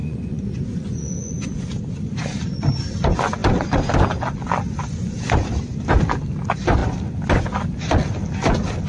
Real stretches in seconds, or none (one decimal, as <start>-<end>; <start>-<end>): 1.5-8.9